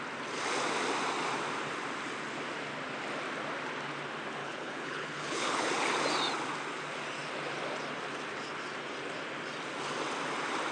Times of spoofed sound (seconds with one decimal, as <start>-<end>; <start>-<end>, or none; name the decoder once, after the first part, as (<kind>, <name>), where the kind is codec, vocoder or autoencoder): 4.4-5.7 (codec, HILCodec)